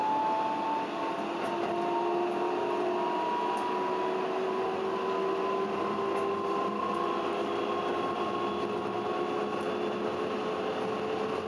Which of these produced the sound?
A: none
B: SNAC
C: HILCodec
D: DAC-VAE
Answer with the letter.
A